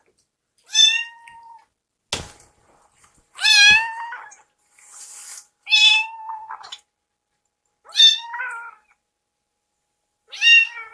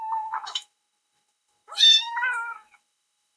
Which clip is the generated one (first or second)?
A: second